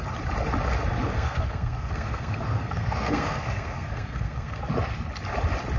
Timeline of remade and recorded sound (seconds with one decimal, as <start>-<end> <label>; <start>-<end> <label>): 0.0-1.1 recorded; 1.1-4.6 remade; 4.6-5.8 recorded